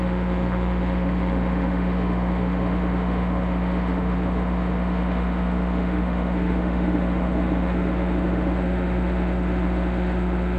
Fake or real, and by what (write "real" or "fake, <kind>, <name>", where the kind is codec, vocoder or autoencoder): fake, autoencoder, DAC-VAE